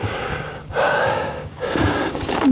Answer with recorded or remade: remade